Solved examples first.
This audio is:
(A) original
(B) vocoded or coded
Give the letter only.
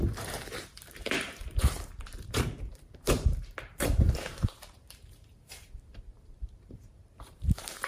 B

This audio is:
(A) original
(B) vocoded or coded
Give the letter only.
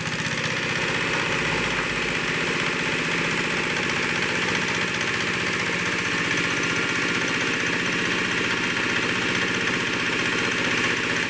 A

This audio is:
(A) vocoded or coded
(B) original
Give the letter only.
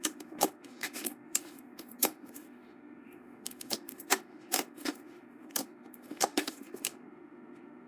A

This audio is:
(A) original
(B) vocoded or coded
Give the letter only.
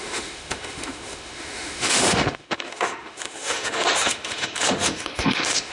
B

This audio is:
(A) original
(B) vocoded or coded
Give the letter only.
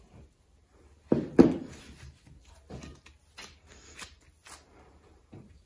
A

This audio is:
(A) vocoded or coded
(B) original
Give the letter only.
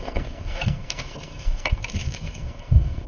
A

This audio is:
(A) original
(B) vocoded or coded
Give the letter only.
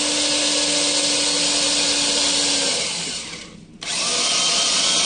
A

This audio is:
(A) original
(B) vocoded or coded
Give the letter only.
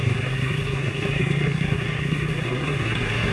B